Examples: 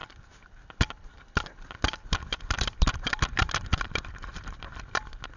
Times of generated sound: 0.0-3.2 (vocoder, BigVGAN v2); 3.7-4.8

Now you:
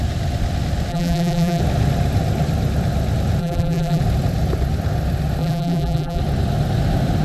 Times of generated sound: 0.9-1.6 (vocoder, BigVGAN v2); 3.4-4.0; 5.4-6.2

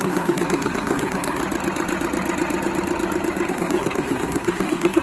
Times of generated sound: 0.0-1.4 (codec, SNAC); 3.5-5.0

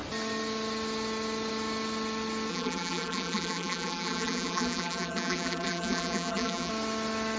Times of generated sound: 2.5-6.7 (vocoder, BigVGAN v2)

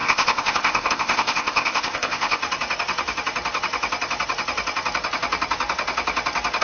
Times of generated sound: 0.0-2.4 (codec, ZipCodec)

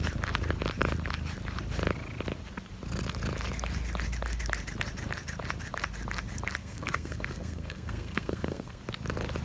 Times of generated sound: 6.6-8.8 (codec, SNAC)

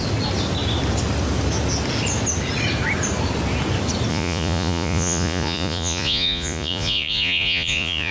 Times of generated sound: 4.1-8.1 (vocoder, Vocos)

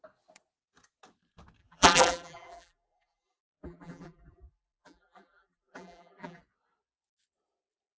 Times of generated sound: 1.6-6.4 (vocoder, BigVGAN v2)